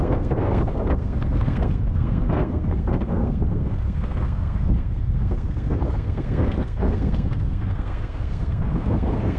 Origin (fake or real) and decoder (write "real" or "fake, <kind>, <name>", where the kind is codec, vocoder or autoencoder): fake, codec, SNAC